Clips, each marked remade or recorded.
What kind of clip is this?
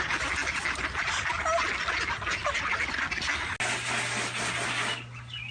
recorded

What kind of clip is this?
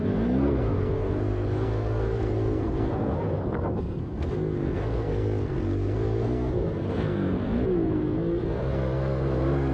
remade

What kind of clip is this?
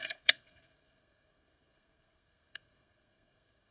remade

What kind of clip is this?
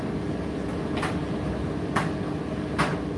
recorded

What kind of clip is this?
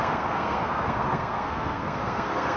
remade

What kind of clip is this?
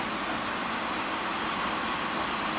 recorded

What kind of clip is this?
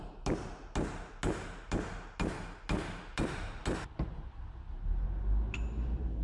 recorded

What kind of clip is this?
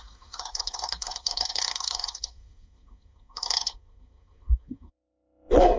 remade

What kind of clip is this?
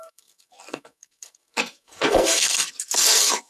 remade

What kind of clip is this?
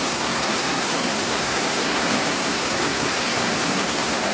remade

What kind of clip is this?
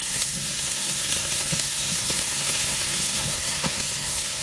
remade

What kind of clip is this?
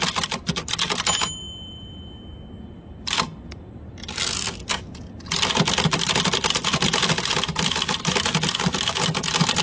recorded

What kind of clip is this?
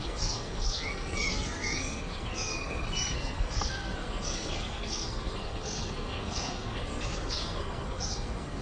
remade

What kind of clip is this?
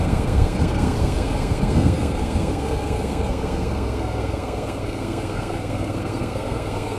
remade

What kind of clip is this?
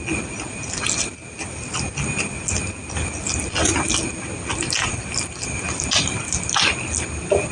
recorded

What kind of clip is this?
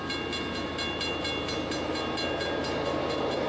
recorded